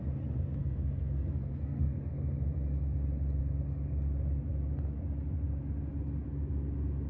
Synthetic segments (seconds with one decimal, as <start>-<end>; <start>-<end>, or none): 0.6-2.1